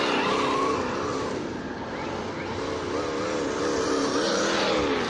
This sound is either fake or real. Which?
real